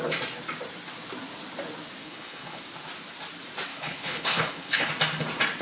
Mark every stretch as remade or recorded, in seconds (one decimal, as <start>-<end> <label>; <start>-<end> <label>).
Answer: 0.0-2.0 recorded; 2.0-2.6 remade; 2.6-3.7 recorded; 3.7-4.9 remade; 4.9-5.6 recorded